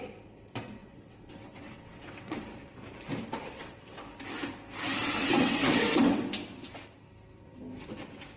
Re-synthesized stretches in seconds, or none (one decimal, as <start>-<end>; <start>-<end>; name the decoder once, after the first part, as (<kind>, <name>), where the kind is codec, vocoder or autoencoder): 0.8-2.4 (vocoder, WaveNeXt); 3.4-4.0; 5.0-6.2